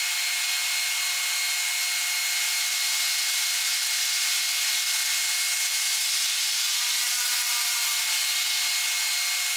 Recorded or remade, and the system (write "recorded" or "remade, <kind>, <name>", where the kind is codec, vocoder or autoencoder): recorded